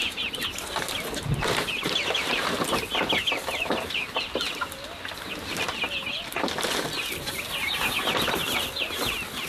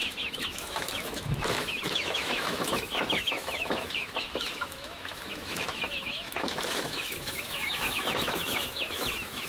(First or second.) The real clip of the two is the first